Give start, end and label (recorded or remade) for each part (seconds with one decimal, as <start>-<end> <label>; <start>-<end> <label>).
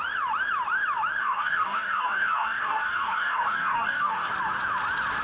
0.0-1.2 recorded; 1.2-4.3 remade; 4.3-5.2 recorded